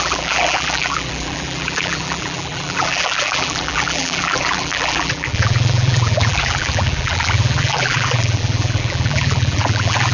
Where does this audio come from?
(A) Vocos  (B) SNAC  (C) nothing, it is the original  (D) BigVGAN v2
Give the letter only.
D